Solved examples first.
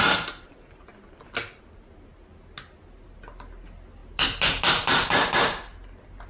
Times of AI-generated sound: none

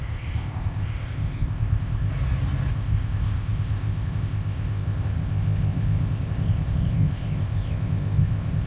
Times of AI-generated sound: 0.0-2.1 (codec, ZipCodec); 2.7-8.7

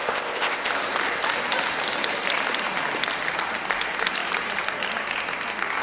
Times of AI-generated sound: 0.0-0.7 (codec, ZipCodec)

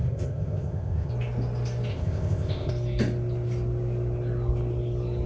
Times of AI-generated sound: 0.0-1.1 (codec, ZipCodec); 1.9-2.7

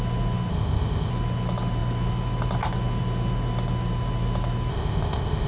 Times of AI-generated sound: 0.5-1.1 (codec, ZipCodec); 4.7-5.5